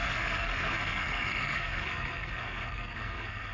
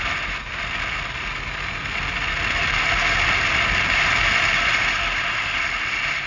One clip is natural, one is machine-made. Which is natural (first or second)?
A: second